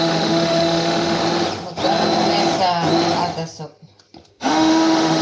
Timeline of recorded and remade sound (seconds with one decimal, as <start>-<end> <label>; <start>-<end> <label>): 0.0-1.2 remade; 1.2-4.3 recorded; 4.3-5.2 remade